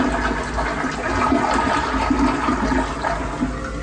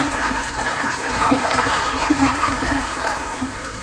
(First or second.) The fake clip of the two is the second